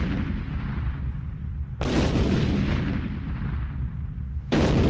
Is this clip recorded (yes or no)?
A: no